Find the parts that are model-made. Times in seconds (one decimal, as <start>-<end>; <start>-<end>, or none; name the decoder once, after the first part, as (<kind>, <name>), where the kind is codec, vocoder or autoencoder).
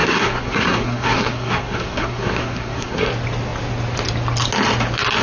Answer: 0.0-3.1 (codec, SNAC)